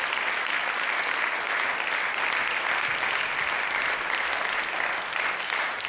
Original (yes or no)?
yes